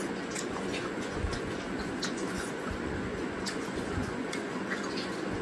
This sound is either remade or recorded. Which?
remade